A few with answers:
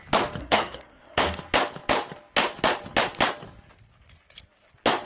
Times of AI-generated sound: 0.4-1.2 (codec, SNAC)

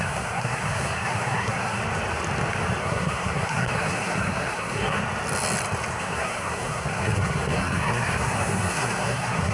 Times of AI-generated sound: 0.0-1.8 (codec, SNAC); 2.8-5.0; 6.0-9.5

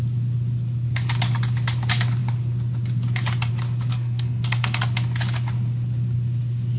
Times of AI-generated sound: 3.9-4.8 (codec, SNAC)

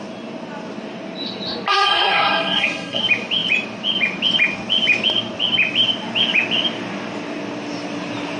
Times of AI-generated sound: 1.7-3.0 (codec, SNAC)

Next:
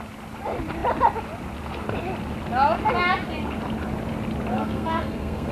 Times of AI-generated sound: 4.5-5.5 (codec, SNAC)

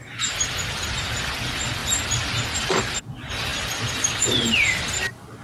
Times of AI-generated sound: none

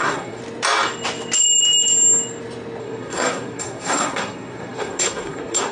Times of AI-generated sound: 0.0-0.4 (codec, SNAC); 2.8-5.7

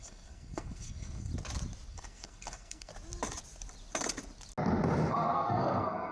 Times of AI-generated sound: 0.0-1.3 (codec, SNAC); 1.9-2.9; 5.1-6.1